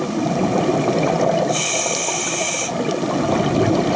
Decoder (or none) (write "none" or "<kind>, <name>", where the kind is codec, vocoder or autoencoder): none